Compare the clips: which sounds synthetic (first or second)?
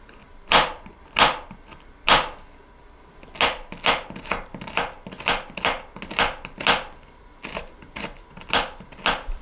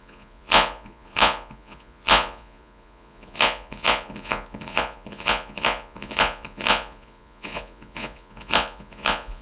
second